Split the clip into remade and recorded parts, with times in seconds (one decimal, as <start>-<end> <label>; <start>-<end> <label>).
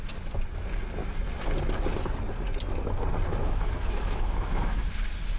0.0-3.4 recorded; 3.4-4.8 remade; 4.8-5.4 recorded